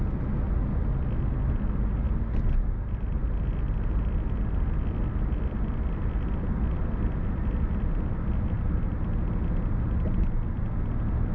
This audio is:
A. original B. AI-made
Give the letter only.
A